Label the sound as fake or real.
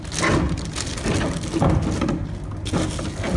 real